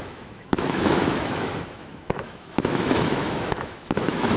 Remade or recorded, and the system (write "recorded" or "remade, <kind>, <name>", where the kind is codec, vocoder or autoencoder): remade, autoencoder, DAC-VAE